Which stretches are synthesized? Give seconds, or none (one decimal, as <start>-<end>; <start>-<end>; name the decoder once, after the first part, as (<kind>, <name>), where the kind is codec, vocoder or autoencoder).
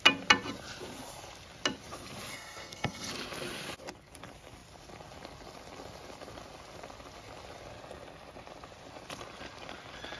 2.3-3.1 (codec, SNAC)